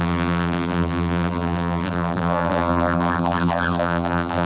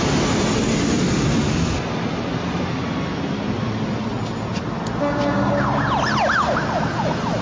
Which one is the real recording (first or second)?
second